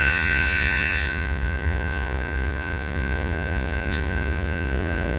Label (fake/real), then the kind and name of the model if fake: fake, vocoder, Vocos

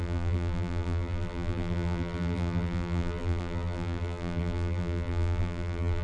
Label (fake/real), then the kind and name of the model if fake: fake, vocoder, BigVGAN v2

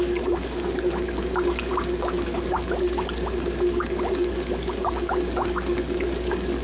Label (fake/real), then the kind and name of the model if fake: fake, codec, DAC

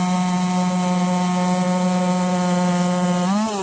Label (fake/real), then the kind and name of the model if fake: real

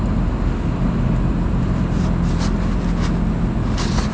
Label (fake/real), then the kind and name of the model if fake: real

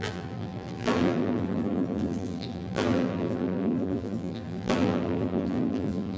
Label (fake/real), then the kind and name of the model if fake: fake, vocoder, BigVGAN v2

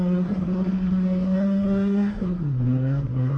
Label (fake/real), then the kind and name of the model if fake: fake, codec, SNAC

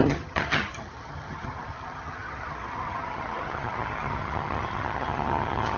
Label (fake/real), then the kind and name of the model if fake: fake, vocoder, HiFi-GAN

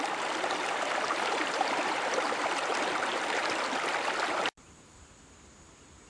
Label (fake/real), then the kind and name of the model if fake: fake, vocoder, BigVGAN v2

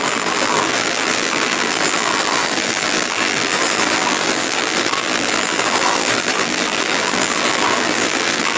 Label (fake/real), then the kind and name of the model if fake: fake, vocoder, BigVGAN v2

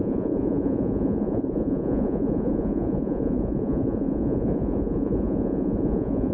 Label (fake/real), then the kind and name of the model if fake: fake, vocoder, Vocos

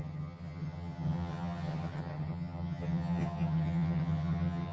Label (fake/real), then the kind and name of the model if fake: fake, vocoder, HiFi-GAN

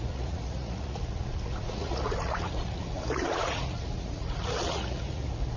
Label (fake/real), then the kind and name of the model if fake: fake, vocoder, Vocos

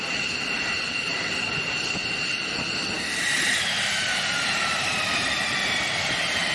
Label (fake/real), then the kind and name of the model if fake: real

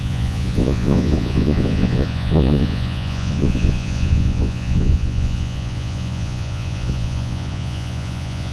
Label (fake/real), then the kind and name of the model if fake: fake, vocoder, Vocos